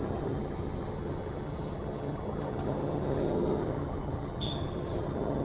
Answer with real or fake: fake